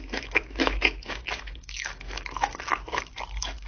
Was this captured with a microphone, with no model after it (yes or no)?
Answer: no